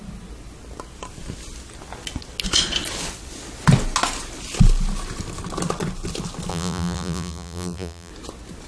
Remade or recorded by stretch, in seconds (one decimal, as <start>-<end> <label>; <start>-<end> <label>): 0.0-6.5 recorded; 6.5-8.1 remade; 8.1-8.7 recorded